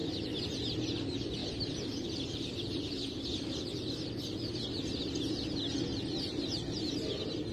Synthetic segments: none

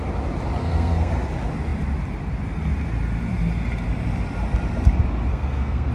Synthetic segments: 0.6-1.1 (codec, SNAC); 5.3-5.9